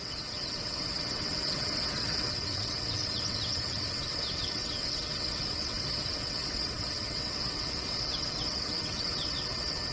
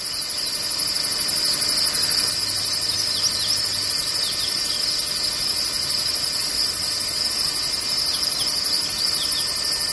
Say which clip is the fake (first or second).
first